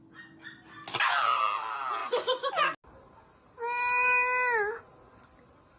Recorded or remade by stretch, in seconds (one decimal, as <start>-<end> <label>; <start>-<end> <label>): 0.0-2.0 recorded; 2.0-2.5 remade; 2.5-5.8 recorded